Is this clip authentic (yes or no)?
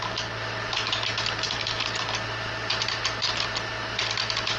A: yes